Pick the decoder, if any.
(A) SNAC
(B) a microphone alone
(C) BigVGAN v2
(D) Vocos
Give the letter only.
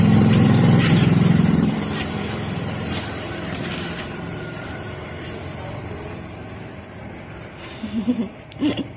C